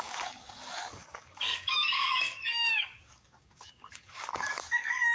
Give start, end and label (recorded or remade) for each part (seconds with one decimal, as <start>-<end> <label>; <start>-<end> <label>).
0.0-5.1 remade